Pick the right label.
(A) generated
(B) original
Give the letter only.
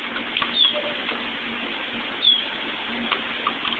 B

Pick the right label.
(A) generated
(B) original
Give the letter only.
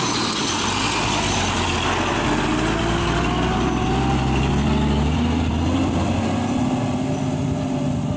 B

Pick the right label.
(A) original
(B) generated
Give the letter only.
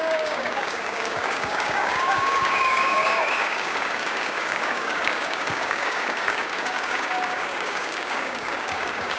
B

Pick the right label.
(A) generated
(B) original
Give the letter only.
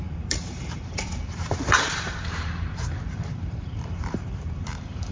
A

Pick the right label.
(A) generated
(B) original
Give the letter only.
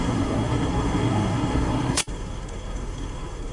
A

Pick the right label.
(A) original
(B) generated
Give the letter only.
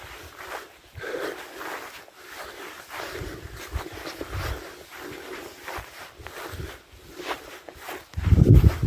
A